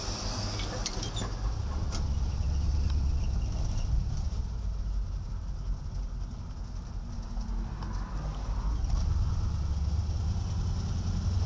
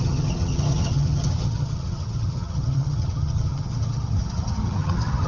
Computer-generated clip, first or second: second